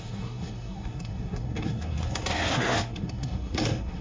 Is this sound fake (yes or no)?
yes